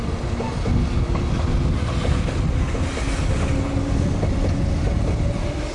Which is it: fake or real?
real